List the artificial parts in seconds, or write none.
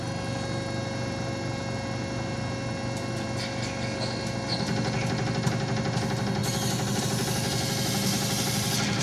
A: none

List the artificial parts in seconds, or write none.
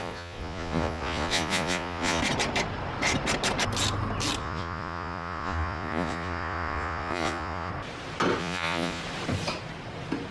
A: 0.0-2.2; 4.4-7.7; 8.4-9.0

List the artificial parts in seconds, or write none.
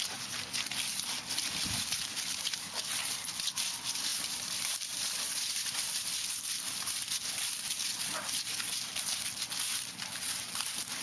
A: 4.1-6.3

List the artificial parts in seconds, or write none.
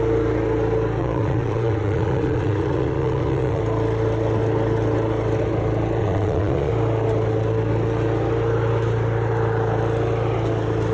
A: 1.0-3.6; 6.0-6.7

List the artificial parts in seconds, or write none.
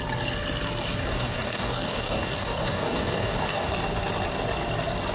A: 1.1-3.7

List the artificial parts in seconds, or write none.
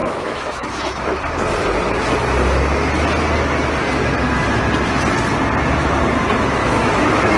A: 0.0-1.2; 6.6-7.4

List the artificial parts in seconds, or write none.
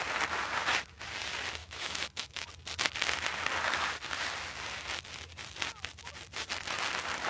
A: 1.6-2.5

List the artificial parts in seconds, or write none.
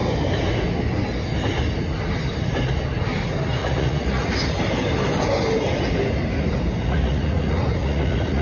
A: 3.6-4.3; 6.8-8.4